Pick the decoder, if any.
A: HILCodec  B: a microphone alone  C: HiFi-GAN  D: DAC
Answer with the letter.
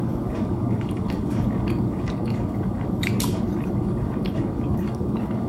D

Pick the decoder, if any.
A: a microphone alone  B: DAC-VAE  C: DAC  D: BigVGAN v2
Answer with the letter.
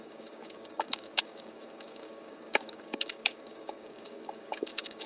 C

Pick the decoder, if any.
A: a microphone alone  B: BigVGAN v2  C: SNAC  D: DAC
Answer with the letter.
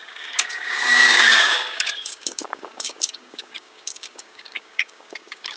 D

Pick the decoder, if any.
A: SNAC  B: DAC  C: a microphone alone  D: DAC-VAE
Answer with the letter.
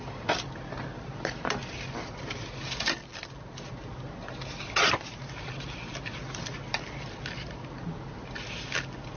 C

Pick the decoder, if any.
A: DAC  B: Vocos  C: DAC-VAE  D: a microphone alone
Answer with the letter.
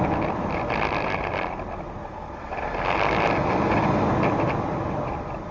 D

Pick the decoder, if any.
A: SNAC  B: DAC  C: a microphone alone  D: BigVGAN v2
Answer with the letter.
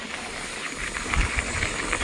B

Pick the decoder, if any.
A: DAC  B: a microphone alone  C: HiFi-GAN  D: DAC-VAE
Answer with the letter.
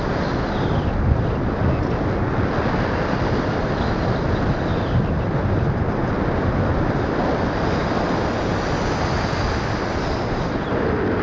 B